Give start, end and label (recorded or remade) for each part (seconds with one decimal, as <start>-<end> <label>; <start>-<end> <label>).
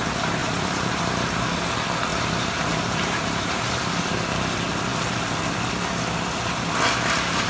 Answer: 0.0-0.4 recorded; 0.4-1.0 remade; 1.0-2.1 recorded; 2.1-3.8 remade; 3.8-7.5 recorded